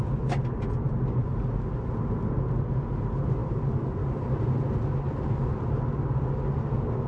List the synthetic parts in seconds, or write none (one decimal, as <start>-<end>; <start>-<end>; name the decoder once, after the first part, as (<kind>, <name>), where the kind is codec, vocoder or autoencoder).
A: 1.2-2.0 (vocoder, BigVGAN v2); 3.4-4.6